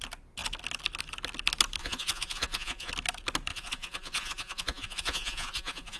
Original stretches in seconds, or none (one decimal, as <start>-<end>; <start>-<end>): 0.0-1.8; 2.9-3.5